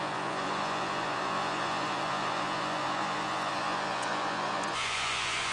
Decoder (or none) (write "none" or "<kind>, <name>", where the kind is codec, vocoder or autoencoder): vocoder, Vocos